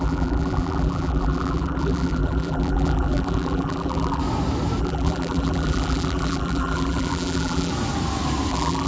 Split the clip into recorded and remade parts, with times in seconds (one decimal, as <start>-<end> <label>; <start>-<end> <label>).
0.0-4.2 remade; 4.2-4.8 recorded; 4.8-7.7 remade; 7.7-8.5 recorded; 8.5-8.9 remade